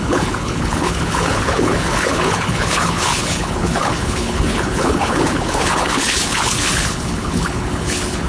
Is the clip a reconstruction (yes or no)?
yes